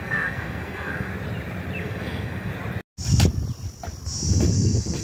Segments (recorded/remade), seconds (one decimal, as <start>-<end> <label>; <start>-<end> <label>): 0.0-1.1 remade; 1.1-1.8 recorded; 1.8-2.5 remade; 2.5-4.3 recorded; 4.3-5.0 remade